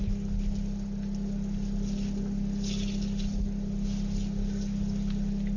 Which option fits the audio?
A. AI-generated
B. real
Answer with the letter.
B